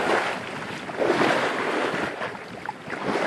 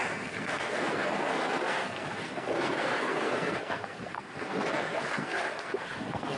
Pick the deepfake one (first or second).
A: second